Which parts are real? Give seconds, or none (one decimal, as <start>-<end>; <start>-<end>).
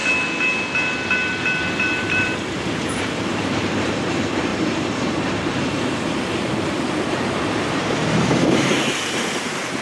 0.0-2.0